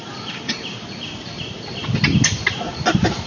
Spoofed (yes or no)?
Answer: no